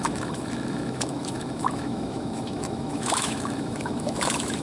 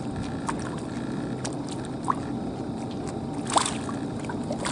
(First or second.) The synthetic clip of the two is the first